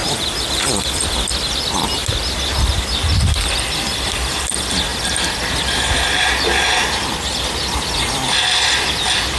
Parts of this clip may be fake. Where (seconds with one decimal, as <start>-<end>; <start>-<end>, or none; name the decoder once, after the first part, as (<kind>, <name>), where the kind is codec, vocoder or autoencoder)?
0.0-0.8 (vocoder, BigVGAN v2)